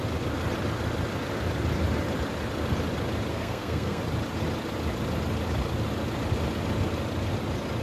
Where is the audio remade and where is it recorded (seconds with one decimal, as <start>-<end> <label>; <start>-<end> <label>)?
0.0-3.3 recorded; 3.3-4.0 remade; 4.0-7.8 recorded